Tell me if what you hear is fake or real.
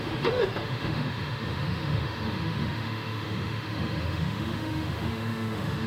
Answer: fake